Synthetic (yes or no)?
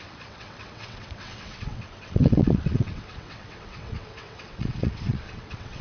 yes